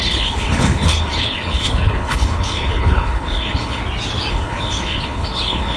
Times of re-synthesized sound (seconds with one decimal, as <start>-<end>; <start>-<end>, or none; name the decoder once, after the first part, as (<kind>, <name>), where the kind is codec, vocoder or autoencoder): 0.0-3.8 (codec, HILCodec); 4.3-5.8